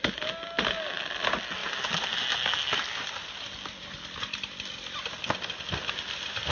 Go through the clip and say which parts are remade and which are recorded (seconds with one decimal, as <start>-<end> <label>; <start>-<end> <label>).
0.0-6.5 recorded